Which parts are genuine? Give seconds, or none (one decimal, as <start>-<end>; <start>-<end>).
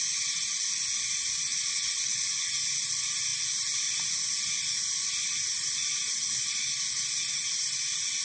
0.0-1.5; 2.5-8.2